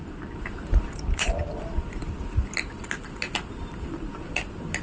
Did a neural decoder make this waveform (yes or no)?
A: no